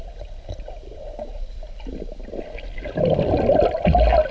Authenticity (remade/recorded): recorded